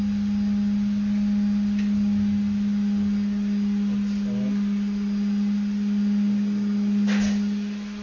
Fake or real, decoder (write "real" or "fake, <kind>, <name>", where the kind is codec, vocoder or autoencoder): real